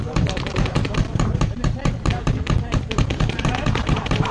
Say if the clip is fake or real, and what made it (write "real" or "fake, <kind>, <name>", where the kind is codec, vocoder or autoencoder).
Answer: fake, vocoder, BigVGAN v2